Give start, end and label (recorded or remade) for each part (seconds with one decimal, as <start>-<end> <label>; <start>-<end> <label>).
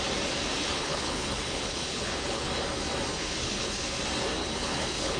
0.0-0.7 recorded; 0.7-2.5 remade; 2.5-3.2 recorded; 3.2-4.0 remade; 4.0-4.4 recorded; 4.4-5.2 remade